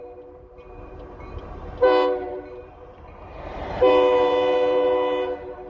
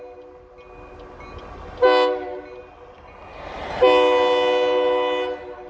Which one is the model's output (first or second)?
first